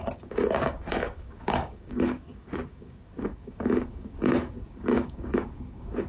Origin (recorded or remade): remade